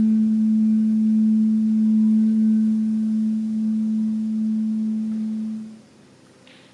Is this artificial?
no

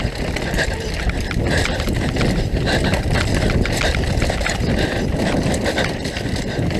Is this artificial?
no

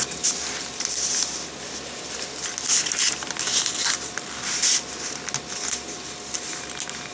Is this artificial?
no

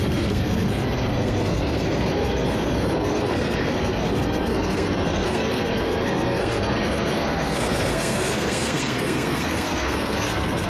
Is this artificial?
yes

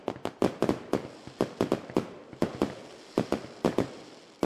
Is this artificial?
no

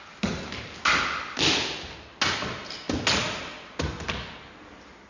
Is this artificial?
no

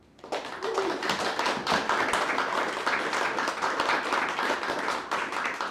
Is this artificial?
no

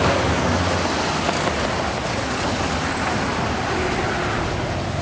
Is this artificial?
no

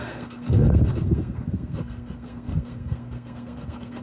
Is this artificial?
yes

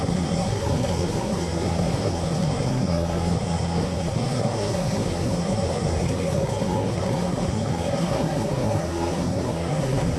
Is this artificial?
yes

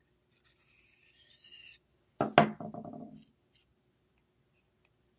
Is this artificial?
no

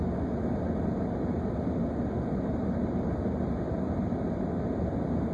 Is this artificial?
no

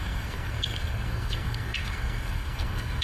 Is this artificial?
yes